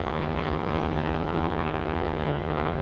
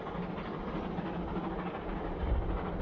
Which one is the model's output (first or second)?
first